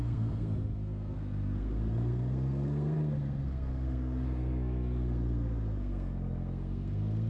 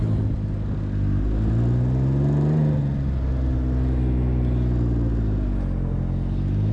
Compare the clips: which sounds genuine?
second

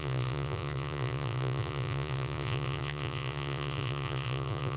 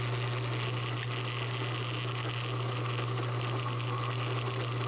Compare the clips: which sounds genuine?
second